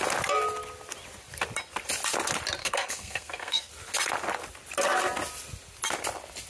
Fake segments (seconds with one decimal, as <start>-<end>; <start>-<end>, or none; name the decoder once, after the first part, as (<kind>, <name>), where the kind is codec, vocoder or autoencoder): 2.6-3.7 (codec, SNAC)